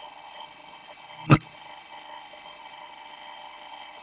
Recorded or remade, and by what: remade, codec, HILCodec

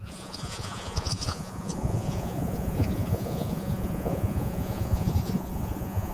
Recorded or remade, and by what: remade, vocoder, Vocos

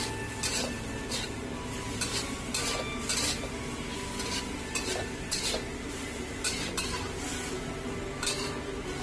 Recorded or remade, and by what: recorded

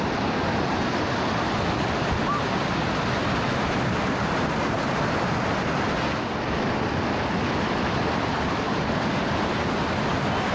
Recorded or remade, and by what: recorded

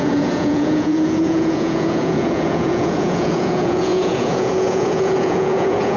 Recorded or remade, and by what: remade, vocoder, Vocos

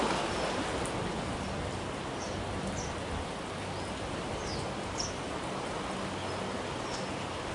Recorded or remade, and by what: recorded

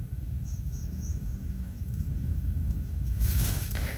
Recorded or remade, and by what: remade, codec, DAC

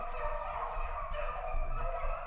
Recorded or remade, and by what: recorded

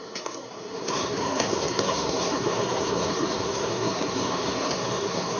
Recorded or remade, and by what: remade, codec, SNAC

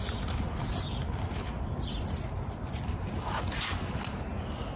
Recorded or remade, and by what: recorded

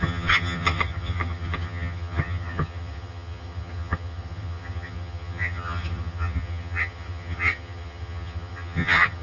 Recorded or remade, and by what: remade, vocoder, HiFi-GAN